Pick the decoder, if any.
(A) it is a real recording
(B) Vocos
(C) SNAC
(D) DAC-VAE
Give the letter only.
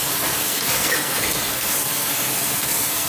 C